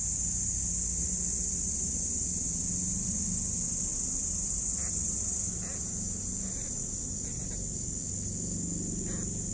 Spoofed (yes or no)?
no